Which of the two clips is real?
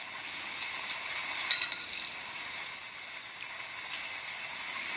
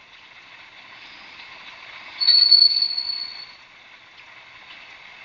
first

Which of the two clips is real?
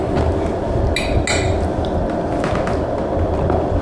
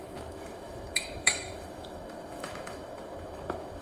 first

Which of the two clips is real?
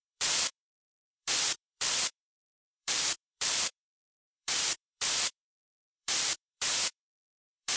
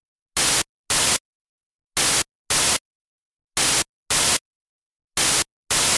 second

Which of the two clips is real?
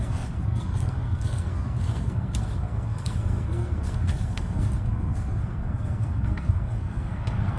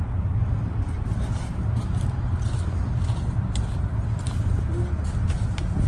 second